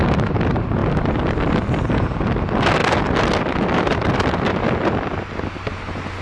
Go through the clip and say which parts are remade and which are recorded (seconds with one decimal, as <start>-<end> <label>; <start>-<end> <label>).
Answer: 0.0-6.2 recorded